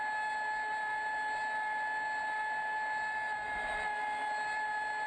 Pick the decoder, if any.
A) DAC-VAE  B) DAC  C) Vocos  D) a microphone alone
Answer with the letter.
D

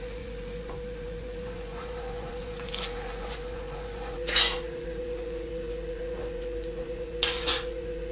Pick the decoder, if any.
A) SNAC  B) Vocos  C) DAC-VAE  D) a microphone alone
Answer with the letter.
B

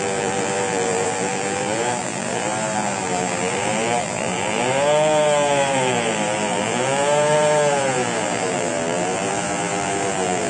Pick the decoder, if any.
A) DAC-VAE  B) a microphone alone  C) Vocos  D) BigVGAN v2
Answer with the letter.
D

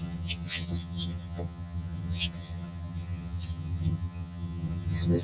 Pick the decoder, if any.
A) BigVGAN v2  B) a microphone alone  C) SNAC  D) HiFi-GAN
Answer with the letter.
D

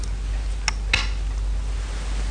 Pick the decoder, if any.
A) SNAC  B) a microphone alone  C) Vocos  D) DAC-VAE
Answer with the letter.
B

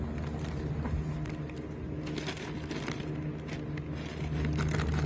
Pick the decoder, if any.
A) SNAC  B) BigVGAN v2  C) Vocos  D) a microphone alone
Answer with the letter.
D